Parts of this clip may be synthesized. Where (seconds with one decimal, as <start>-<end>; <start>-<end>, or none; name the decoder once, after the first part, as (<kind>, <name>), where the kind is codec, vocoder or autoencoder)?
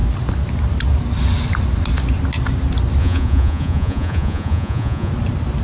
3.0-5.1 (vocoder, Vocos)